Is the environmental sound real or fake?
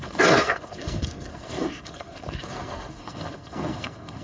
fake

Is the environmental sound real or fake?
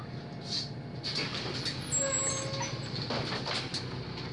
real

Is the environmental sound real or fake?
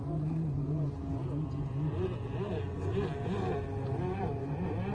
real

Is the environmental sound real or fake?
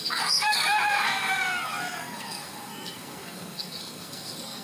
fake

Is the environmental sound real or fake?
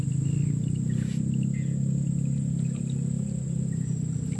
real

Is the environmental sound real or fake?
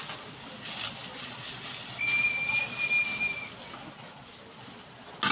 real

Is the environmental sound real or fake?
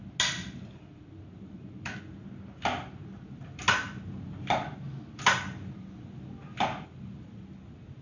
real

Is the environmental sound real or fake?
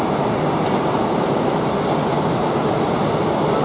real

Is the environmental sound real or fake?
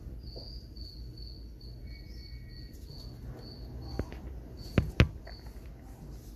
real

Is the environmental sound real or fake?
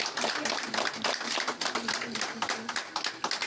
real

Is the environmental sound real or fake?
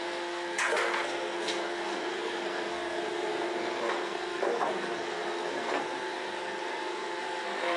fake